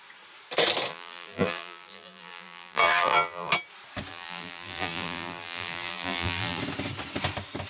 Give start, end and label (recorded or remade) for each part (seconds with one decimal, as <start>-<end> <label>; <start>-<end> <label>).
0.0-0.9 recorded; 0.9-3.5 remade; 3.5-4.1 recorded; 4.1-6.6 remade; 6.6-7.7 recorded